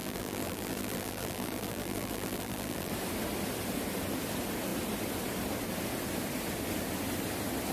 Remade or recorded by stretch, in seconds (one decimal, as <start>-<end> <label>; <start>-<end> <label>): 0.0-2.9 remade; 2.9-7.7 recorded